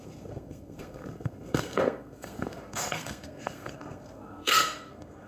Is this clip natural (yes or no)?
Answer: no